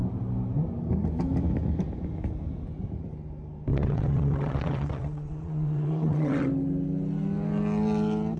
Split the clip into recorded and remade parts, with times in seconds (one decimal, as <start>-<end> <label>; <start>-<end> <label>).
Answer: 0.0-3.7 recorded; 3.7-6.5 remade; 6.5-8.4 recorded